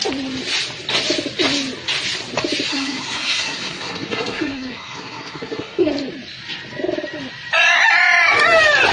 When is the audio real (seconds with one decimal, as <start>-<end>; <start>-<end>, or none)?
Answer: 0.0-2.7; 5.9-8.9